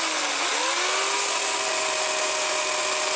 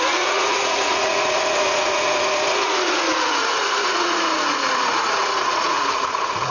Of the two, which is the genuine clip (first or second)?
first